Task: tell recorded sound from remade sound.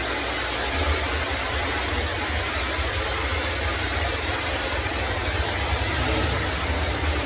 recorded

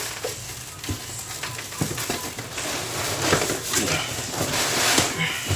recorded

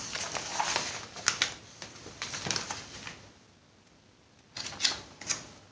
recorded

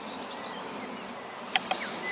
recorded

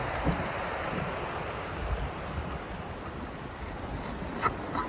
recorded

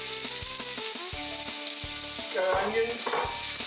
recorded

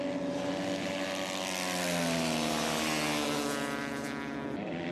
recorded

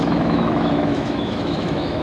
remade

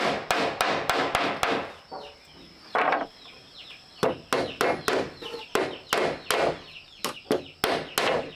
recorded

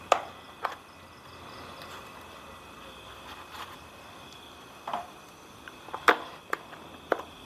recorded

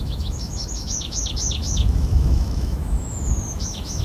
remade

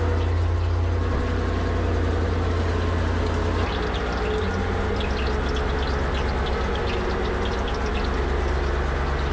recorded